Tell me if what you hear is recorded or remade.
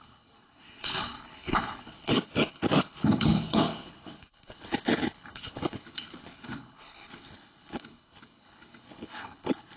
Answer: remade